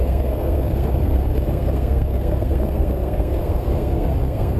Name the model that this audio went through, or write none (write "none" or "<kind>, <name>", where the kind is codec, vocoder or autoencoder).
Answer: codec, SNAC